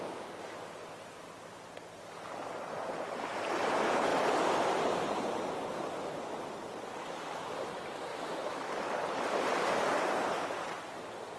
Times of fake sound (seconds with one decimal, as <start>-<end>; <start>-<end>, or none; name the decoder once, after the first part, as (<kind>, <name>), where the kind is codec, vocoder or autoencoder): 7.0-7.5 (autoencoder, DAC-VAE); 8.1-8.7